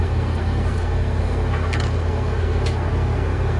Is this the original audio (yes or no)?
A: no